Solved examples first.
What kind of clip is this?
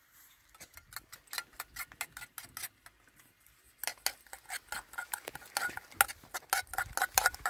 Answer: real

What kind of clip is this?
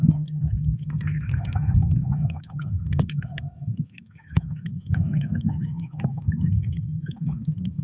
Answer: fake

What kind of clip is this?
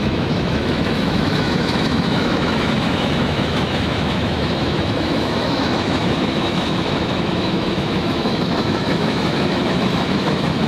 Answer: fake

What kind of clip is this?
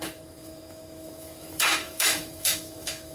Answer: fake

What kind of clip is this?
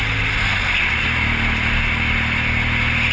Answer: real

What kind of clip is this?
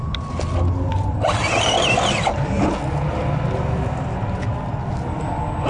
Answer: real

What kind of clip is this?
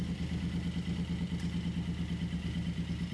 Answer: real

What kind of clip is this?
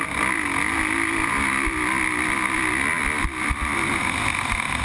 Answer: real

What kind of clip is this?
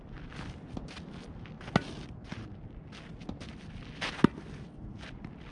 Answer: real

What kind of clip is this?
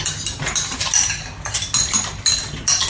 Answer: real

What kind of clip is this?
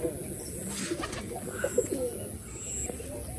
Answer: real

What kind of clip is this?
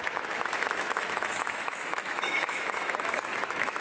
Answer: fake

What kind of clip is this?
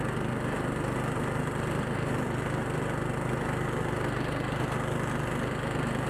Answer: real